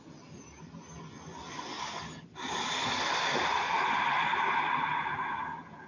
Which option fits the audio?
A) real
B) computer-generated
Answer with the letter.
A